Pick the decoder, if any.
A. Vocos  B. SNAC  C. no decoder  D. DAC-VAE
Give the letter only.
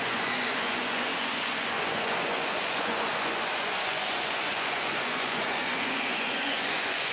A